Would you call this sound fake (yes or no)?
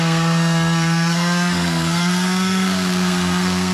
yes